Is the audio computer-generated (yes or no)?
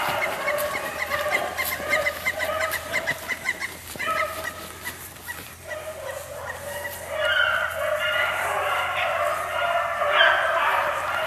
no